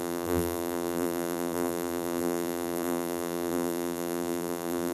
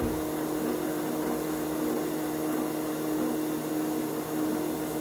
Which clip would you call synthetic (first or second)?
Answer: first